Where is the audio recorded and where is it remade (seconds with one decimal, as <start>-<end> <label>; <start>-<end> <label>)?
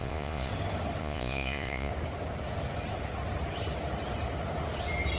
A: 0.0-0.5 remade; 0.5-1.0 recorded; 1.0-1.9 remade; 1.9-5.2 recorded